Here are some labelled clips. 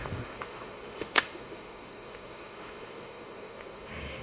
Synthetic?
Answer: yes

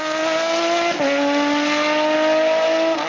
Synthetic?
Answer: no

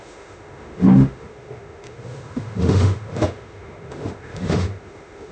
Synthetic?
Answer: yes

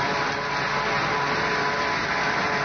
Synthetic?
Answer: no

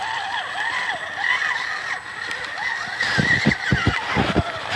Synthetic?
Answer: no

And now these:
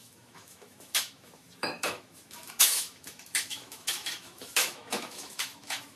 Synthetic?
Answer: yes